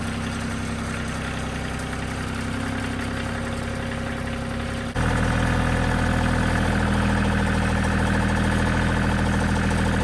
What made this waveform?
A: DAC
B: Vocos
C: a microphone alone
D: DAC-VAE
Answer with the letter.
C